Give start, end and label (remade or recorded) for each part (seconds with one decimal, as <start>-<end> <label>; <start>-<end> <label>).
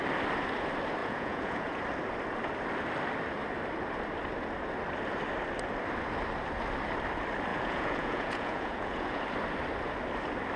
0.0-1.0 recorded; 1.0-1.8 remade; 1.8-7.5 recorded; 7.5-9.2 remade; 9.2-10.6 recorded